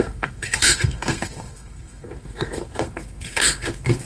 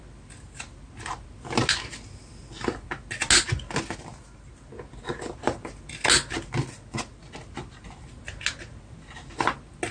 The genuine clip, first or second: second